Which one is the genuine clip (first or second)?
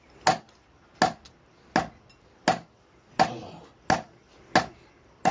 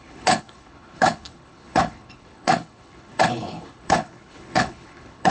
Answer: first